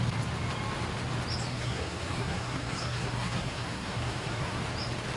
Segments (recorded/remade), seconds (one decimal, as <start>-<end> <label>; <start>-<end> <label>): 0.0-1.5 recorded; 1.5-4.6 remade; 4.6-5.2 recorded